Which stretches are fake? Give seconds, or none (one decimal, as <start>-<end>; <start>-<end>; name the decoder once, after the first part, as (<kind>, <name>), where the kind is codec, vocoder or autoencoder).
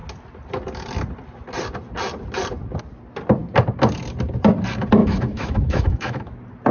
5.0-6.3 (autoencoder, DAC-VAE)